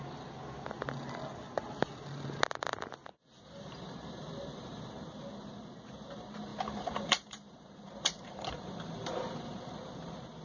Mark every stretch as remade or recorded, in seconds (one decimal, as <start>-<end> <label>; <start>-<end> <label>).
0.0-6.5 recorded; 6.5-9.7 remade; 9.7-10.4 recorded